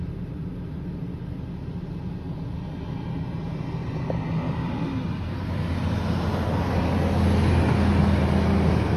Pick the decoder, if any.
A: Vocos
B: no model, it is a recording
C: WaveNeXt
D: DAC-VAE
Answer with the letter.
B